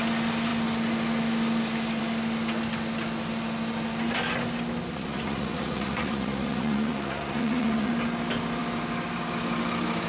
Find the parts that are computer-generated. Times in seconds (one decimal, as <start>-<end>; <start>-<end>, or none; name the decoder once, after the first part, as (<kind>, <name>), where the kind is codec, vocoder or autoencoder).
4.9-7.9 (vocoder, Vocos)